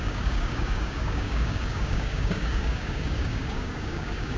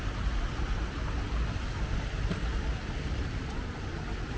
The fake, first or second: first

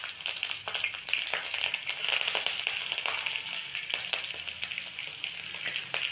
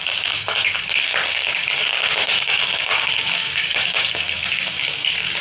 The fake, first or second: second